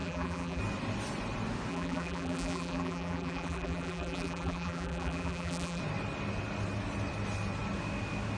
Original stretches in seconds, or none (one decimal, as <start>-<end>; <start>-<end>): 0.6-1.7; 5.8-8.4